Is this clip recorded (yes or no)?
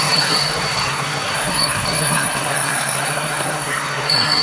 no